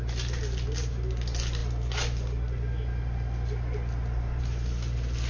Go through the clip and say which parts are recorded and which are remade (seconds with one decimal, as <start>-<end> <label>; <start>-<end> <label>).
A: 0.0-5.3 recorded

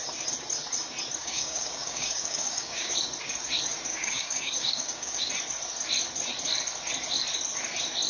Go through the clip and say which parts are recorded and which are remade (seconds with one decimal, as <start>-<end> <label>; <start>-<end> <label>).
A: 0.0-1.2 recorded; 1.2-2.9 remade; 2.9-3.9 recorded; 3.9-5.3 remade; 5.3-8.1 recorded

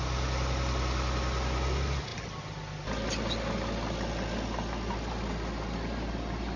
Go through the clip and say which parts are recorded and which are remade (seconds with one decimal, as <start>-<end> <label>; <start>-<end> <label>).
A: 0.0-6.6 recorded

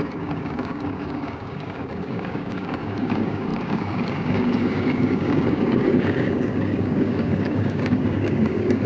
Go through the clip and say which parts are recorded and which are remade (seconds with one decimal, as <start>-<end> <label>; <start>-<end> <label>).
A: 0.0-8.9 remade

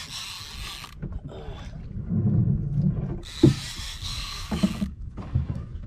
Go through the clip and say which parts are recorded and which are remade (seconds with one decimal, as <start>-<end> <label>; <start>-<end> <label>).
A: 0.0-3.9 recorded; 3.9-5.9 remade

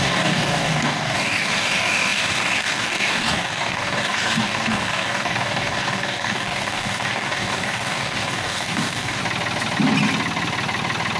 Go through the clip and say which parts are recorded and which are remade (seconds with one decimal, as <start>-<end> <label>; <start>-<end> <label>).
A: 0.0-9.2 remade; 9.2-11.2 recorded

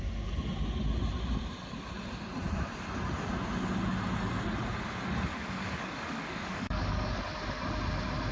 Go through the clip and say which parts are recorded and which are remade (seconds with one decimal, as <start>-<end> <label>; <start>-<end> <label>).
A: 0.0-5.3 recorded; 5.3-7.2 remade; 7.2-8.3 recorded